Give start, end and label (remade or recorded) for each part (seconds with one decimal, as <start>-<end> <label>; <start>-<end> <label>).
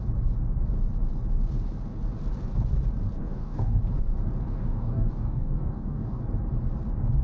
0.0-3.2 recorded; 3.2-3.8 remade; 3.8-4.5 recorded; 4.5-6.2 remade; 6.2-7.2 recorded